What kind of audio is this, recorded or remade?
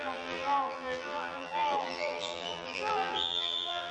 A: remade